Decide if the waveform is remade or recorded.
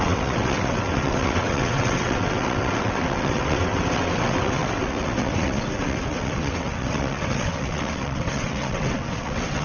remade